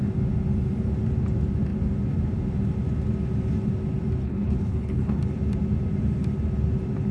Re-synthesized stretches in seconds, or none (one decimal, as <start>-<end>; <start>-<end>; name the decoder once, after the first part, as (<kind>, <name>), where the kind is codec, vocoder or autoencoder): 4.2-5.2 (codec, HILCodec)